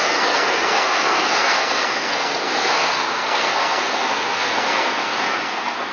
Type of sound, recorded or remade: remade